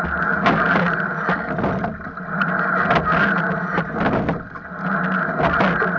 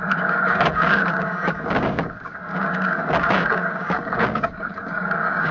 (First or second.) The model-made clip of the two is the second